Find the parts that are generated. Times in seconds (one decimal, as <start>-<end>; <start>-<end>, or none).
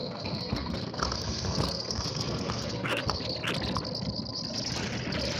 0.0-3.2